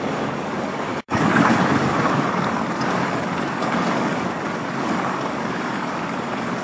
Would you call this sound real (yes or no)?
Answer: no